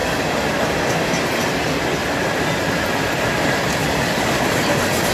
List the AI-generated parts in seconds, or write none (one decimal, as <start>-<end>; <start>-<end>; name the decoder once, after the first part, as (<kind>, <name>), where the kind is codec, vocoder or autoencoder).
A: 2.0-3.2 (vocoder, BigVGAN v2); 3.8-5.1